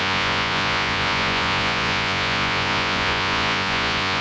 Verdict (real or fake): fake